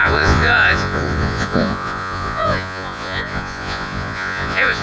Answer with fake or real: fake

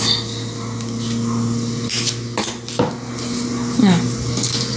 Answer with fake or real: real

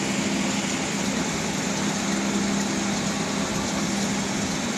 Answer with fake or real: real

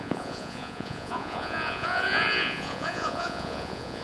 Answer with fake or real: fake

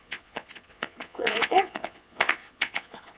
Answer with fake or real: fake